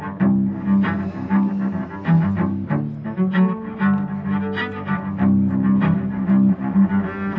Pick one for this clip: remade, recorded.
recorded